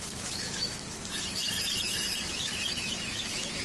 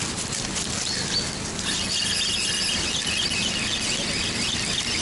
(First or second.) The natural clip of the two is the second